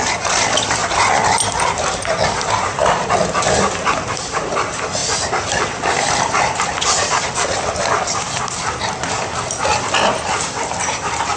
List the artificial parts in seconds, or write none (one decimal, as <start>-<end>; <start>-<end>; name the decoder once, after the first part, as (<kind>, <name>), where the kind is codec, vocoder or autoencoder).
0.8-4.1 (vocoder, BigVGAN v2); 5.0-7.3; 9.7-11.4